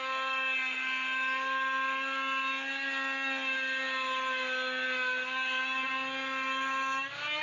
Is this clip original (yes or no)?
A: yes